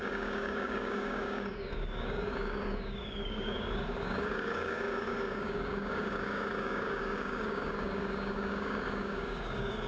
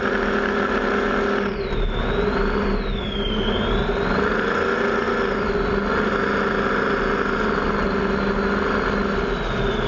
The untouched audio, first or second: second